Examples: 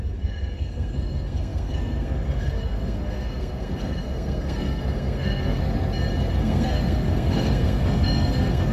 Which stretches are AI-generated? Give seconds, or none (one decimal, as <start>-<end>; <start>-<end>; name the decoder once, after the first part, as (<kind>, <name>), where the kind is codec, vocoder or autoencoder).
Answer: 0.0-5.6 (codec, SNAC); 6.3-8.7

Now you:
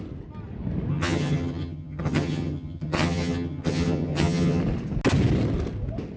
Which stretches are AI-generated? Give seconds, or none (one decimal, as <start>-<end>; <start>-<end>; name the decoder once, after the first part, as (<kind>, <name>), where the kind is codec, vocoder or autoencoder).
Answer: 0.9-4.6 (vocoder, HiFi-GAN)

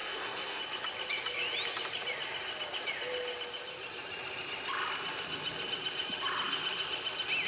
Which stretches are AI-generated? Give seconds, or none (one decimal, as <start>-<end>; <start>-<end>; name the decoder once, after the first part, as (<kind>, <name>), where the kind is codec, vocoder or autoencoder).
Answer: 0.0-0.6 (codec, SNAC)

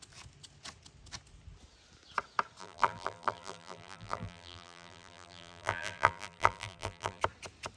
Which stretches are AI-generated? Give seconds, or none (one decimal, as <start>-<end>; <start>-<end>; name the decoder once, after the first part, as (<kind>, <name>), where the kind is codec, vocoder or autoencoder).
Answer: 2.6-7.2 (vocoder, BigVGAN v2)

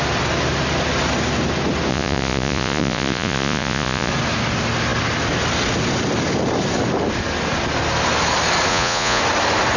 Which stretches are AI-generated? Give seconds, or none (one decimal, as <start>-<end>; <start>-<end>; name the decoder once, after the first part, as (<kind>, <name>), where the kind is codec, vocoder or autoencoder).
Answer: 1.9-4.1 (vocoder, Vocos); 8.7-9.2

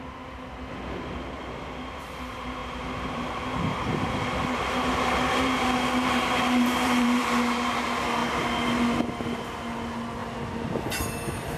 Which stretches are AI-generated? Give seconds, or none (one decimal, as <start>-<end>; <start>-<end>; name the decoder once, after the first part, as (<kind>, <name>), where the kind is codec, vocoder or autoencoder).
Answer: 2.6-7.2 (vocoder, BigVGAN v2)